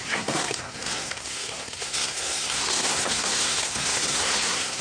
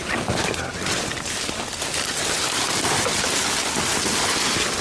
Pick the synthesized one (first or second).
first